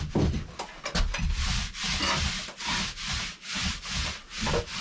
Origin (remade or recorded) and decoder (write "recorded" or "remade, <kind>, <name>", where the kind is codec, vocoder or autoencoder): recorded